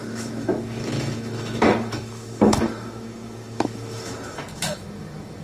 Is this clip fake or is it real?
fake